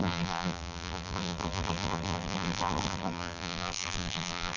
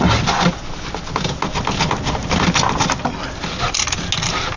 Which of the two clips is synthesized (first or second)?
first